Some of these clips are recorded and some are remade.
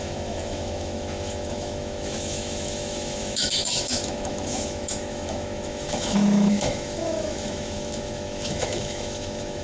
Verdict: remade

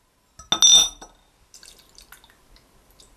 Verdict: recorded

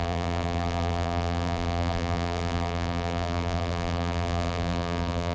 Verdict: remade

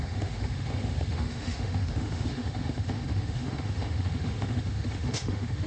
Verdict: remade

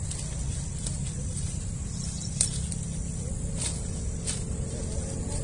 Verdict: recorded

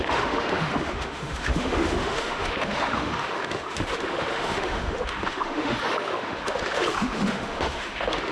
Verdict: remade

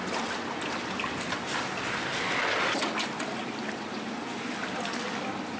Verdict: recorded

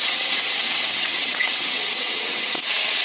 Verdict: remade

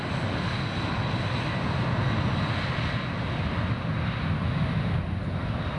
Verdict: recorded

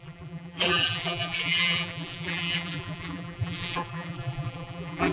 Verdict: remade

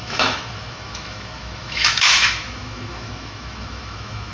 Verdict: remade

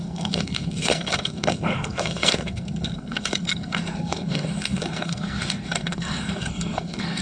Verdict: remade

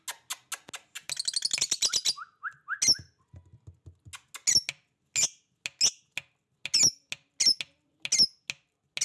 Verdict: recorded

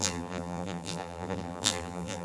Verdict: remade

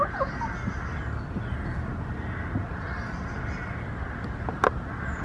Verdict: recorded